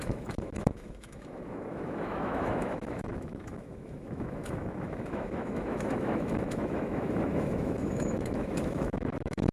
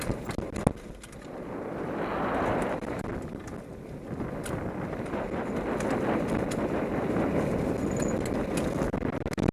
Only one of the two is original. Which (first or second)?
second